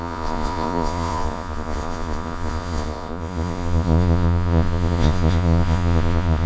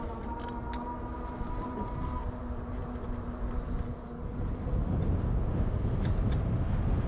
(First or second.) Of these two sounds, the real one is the second